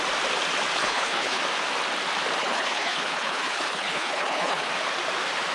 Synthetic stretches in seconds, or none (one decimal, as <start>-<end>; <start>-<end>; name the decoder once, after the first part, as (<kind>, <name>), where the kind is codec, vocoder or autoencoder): 0.8-1.4 (codec, HILCodec); 2.4-4.7